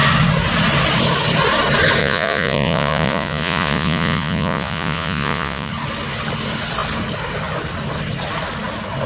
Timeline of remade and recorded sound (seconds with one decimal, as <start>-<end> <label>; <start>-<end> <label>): 0.0-2.0 recorded; 2.0-5.7 remade; 5.7-9.1 recorded